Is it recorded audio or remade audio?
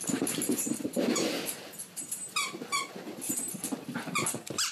remade